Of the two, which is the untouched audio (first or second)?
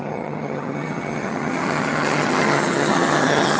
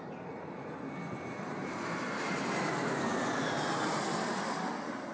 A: second